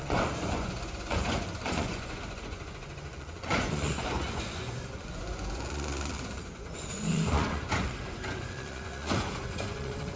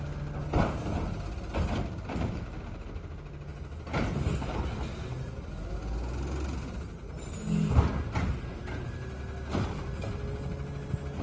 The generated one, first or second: first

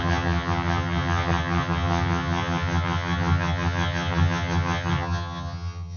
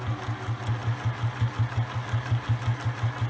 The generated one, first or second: first